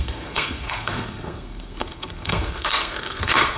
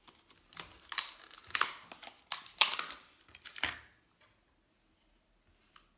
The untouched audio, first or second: second